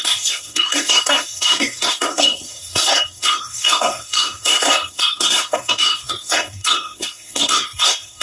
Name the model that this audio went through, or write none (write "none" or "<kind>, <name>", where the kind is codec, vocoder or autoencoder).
codec, SNAC